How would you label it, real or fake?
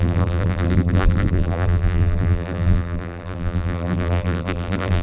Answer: fake